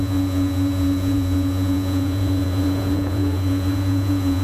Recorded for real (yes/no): no